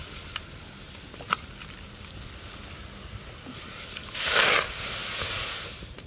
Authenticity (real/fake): real